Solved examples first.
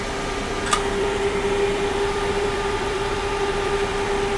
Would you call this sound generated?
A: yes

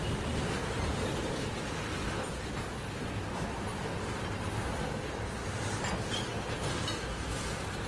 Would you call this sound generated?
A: no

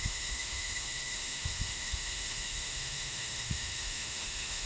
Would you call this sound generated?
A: yes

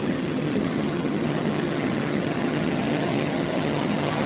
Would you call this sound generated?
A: yes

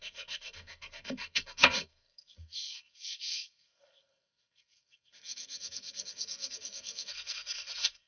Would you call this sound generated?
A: yes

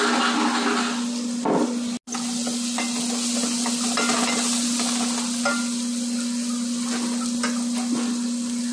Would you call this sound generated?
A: no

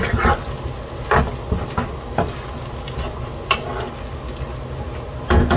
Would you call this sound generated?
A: no